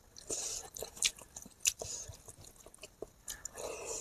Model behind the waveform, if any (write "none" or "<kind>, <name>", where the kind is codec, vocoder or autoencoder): none